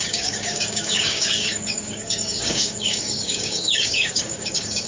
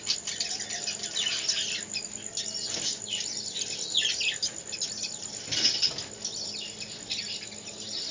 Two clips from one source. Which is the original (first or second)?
second